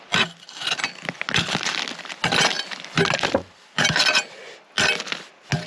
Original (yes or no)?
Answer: yes